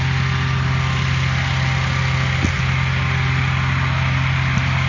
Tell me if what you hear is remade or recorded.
recorded